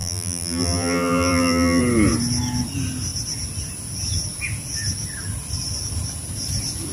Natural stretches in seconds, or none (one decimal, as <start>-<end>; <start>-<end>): 1.8-6.9